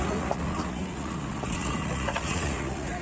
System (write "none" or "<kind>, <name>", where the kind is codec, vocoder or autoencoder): vocoder, Vocos